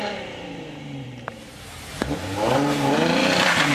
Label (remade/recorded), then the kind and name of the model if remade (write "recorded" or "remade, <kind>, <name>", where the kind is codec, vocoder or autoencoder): remade, vocoder, BigVGAN v2